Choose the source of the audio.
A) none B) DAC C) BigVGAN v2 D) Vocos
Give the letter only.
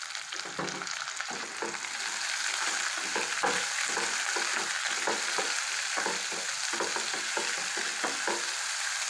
A